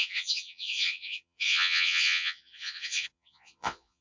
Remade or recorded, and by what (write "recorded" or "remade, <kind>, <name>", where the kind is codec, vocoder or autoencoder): remade, vocoder, Vocos